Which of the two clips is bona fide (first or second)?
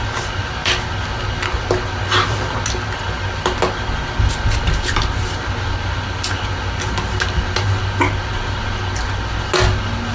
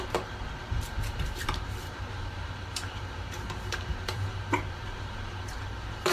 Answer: first